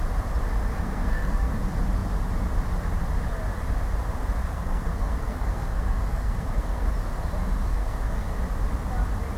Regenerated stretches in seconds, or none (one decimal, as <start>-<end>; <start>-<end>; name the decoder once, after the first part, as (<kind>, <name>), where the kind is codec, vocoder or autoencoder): 0.7-1.5 (codec, SNAC); 4.4-6.9; 7.7-8.3